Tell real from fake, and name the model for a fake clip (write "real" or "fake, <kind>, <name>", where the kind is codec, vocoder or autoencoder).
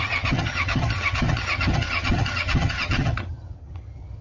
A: fake, vocoder, HiFi-GAN